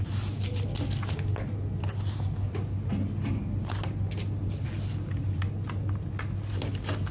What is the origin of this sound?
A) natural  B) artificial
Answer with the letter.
A